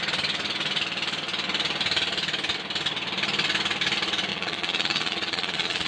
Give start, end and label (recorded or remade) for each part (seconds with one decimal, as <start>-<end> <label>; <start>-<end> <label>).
0.0-4.3 recorded; 4.3-5.9 remade